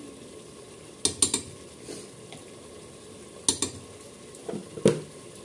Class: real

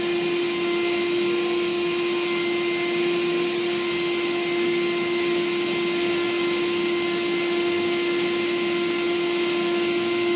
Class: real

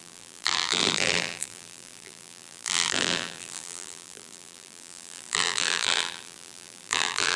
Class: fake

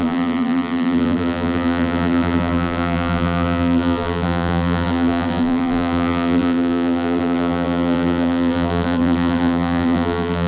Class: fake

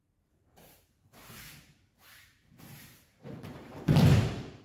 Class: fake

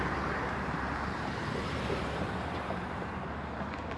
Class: fake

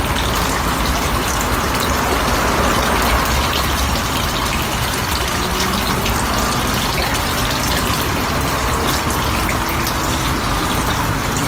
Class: real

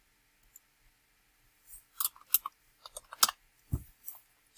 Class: real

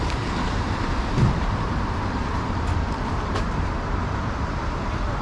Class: fake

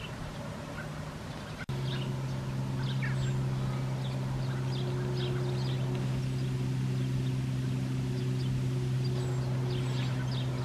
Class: real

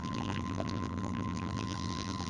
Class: fake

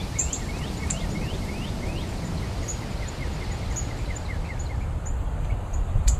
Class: fake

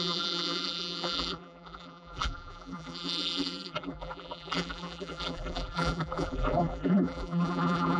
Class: fake